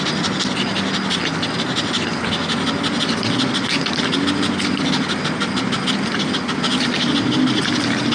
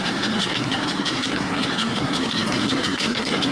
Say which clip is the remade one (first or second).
second